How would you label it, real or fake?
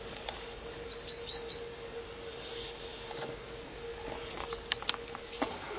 fake